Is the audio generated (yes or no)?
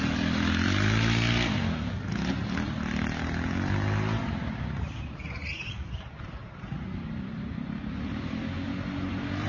no